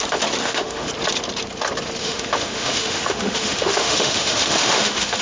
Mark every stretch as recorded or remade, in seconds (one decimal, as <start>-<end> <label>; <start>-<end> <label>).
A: 0.0-0.4 recorded; 0.4-0.9 remade; 0.9-2.0 recorded; 2.0-5.2 remade